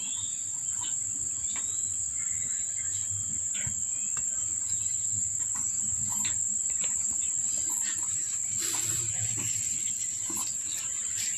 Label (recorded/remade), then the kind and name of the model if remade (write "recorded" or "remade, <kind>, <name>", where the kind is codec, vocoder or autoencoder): remade, vocoder, BigVGAN v2